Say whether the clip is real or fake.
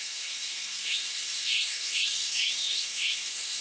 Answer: fake